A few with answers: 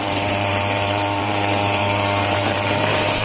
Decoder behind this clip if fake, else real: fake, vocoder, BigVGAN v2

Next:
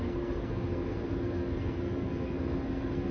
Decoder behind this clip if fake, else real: fake, codec, SNAC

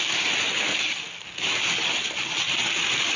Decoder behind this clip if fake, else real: real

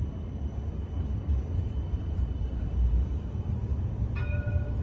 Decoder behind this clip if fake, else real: real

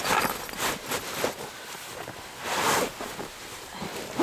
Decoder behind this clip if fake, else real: real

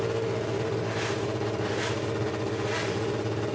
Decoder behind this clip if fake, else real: real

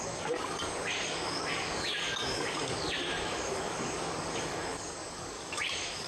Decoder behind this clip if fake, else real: fake, codec, DAC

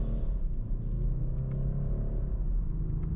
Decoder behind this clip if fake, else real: real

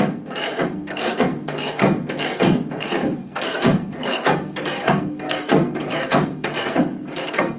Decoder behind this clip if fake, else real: fake, codec, SNAC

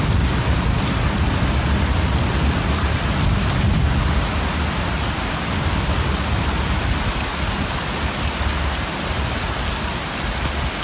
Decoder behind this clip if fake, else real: real